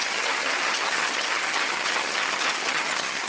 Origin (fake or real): fake